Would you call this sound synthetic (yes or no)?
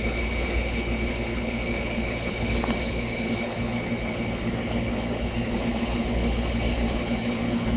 yes